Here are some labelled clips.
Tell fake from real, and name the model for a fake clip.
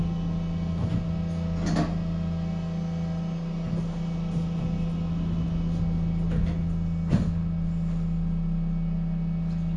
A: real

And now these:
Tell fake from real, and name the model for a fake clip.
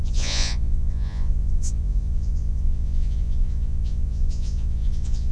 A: fake, vocoder, Vocos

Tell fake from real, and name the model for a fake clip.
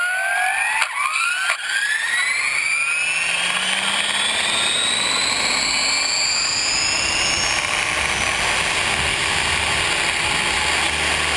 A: real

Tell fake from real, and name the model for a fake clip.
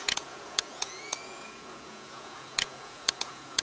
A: fake, vocoder, Vocos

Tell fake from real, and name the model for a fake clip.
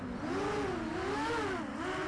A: real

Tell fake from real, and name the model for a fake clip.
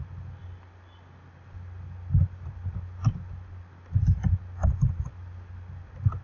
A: real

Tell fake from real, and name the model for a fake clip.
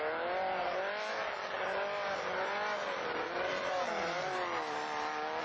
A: real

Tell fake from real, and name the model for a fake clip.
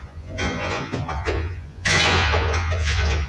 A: fake, vocoder, Vocos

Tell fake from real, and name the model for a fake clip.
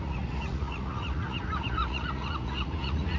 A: fake, vocoder, Vocos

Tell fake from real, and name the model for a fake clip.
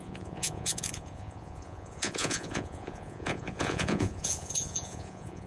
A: fake, vocoder, Vocos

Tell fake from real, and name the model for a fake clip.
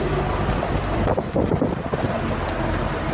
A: real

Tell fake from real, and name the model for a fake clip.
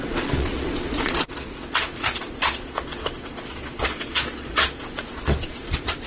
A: fake, vocoder, Vocos